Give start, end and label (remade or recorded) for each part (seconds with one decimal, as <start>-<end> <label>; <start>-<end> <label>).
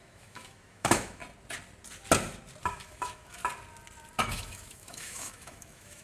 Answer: 0.0-1.2 remade; 1.2-2.7 recorded; 2.7-3.4 remade; 3.4-4.2 recorded; 4.2-6.0 remade